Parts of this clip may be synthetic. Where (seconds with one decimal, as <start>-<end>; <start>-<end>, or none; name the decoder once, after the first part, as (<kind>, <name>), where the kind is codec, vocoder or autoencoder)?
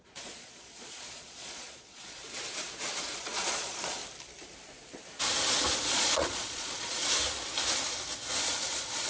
0.0-2.2 (vocoder, Vocos); 3.2-4.0; 5.9-7.0; 8.4-9.1